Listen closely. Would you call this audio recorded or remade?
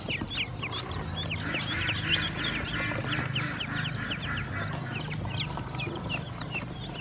recorded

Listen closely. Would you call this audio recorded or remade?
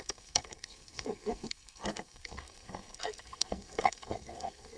remade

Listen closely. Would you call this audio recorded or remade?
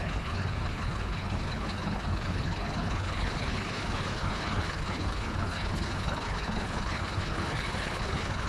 remade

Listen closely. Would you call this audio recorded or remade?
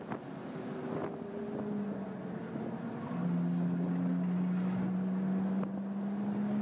recorded